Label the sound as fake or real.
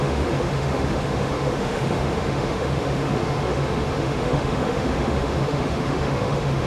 fake